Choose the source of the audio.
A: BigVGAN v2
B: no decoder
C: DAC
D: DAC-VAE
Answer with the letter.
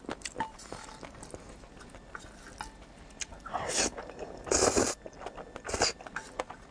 B